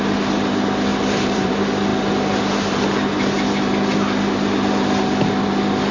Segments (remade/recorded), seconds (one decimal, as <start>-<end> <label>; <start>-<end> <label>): 0.0-0.9 recorded; 0.9-1.5 remade; 1.5-5.9 recorded